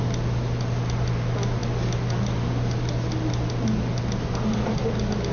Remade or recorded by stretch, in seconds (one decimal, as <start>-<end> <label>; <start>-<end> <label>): 0.0-5.3 recorded